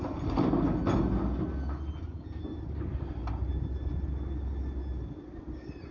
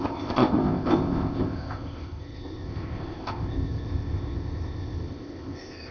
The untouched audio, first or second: first